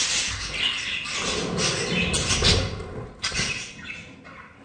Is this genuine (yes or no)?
yes